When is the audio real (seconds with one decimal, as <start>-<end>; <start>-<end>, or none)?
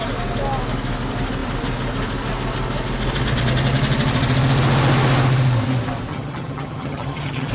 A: 0.0-6.1